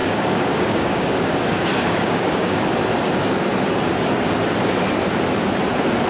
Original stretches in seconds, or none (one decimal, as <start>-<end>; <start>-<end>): 2.6-6.1

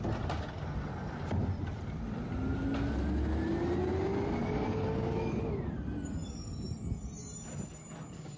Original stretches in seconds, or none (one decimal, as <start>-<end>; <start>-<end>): 0.0-4.4; 5.4-8.4

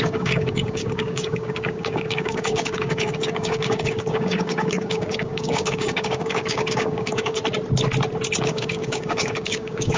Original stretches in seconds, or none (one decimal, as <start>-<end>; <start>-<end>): 7.4-8.4

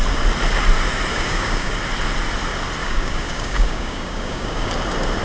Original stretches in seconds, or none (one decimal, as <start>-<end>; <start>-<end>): 0.0-1.1; 1.7-2.8; 4.7-5.2